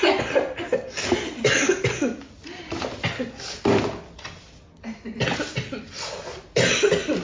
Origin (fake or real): real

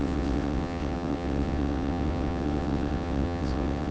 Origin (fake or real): fake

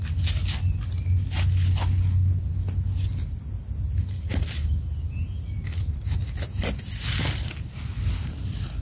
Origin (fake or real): real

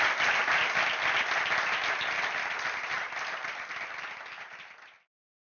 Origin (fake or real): real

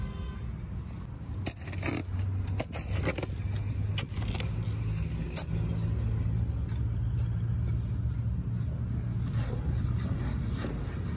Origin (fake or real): real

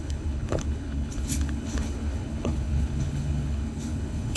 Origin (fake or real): fake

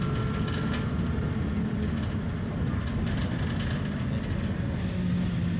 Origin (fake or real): real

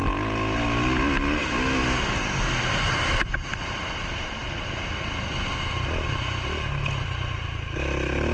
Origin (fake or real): real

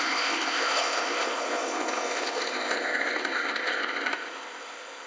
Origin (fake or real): fake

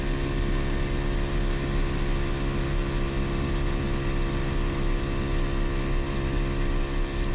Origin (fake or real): real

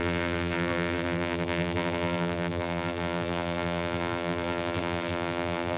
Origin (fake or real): fake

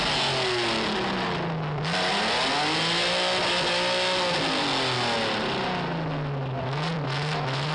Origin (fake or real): real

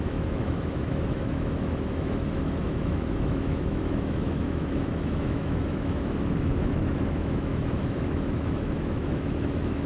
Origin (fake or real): fake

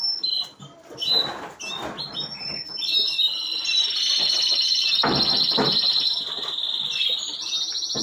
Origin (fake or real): real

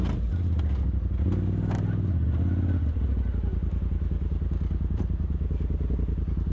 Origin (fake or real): real